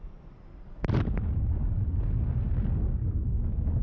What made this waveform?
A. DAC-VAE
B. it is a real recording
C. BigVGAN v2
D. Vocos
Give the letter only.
B